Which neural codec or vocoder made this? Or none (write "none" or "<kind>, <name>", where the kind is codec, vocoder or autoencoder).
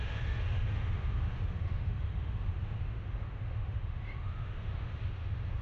autoencoder, DAC-VAE